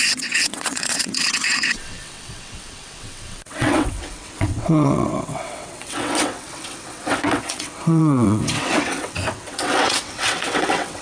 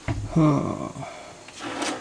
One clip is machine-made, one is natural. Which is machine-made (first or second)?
first